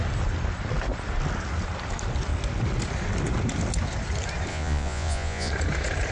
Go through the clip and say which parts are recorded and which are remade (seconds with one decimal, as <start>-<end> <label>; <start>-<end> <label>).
0.0-4.5 recorded; 4.5-5.5 remade; 5.5-6.1 recorded